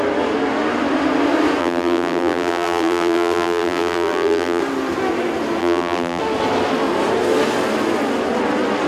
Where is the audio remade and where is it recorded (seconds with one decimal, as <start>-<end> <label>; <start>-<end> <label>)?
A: 0.0-1.6 recorded; 1.6-4.6 remade; 4.6-5.6 recorded; 5.6-6.2 remade; 6.2-8.9 recorded